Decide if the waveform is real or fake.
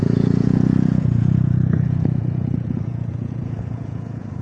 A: fake